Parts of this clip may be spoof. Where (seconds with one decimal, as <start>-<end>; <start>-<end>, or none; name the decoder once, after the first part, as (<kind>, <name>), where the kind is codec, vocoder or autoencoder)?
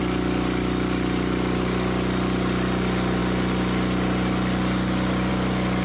none